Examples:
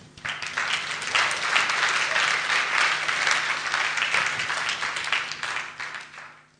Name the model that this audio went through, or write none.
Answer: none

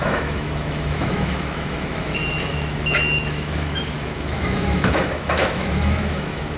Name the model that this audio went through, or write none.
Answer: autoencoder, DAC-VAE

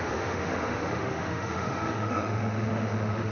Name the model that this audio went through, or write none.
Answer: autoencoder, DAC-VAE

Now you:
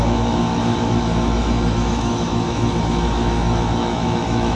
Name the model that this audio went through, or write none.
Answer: autoencoder, DAC-VAE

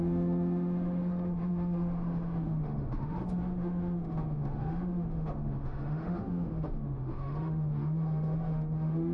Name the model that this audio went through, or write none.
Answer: autoencoder, DAC-VAE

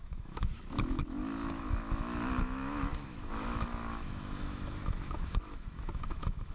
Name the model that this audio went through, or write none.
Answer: autoencoder, DAC-VAE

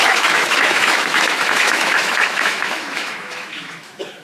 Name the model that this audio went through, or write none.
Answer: autoencoder, DAC-VAE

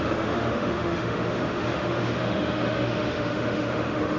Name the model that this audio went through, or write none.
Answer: autoencoder, DAC-VAE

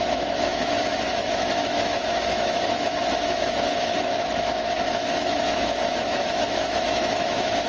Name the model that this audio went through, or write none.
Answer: autoencoder, DAC-VAE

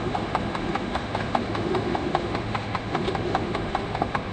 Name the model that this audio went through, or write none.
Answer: autoencoder, DAC-VAE